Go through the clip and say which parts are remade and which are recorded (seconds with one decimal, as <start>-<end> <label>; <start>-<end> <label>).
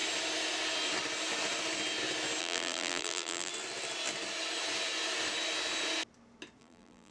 0.0-2.4 recorded; 2.4-3.5 remade; 3.5-6.6 recorded; 6.6-7.1 remade